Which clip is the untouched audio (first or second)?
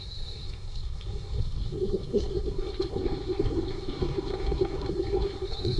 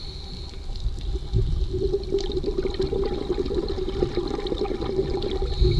second